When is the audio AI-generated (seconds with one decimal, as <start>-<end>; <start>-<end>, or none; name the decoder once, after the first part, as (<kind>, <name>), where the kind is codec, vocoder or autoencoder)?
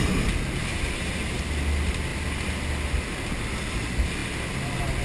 0.6-1.4 (vocoder, BigVGAN v2)